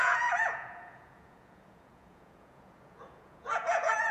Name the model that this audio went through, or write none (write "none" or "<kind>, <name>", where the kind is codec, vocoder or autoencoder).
vocoder, Vocos